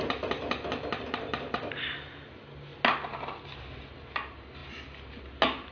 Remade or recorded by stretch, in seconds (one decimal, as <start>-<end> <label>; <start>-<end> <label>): 0.0-5.7 recorded